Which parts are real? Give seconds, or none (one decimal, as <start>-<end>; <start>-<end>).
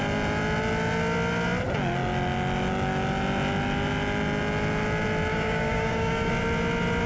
0.0-5.3; 6.3-7.1